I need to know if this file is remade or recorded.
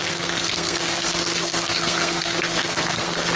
remade